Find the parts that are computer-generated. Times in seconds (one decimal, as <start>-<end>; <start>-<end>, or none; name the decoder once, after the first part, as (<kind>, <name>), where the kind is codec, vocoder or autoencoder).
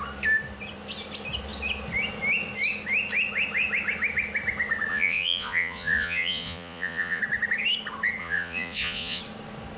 4.9-7.2 (vocoder, Vocos); 8.2-9.2